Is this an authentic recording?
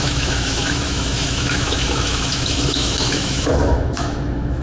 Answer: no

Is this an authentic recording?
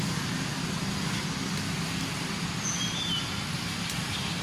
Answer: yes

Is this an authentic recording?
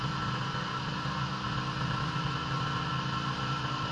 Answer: yes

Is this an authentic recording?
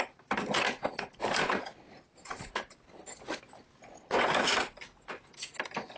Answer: yes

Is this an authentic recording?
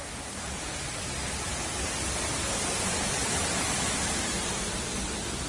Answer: yes